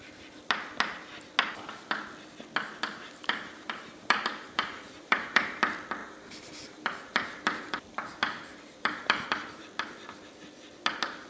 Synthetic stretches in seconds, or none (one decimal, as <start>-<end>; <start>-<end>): 2.9-5.6; 6.0-7.8; 8.5-9.3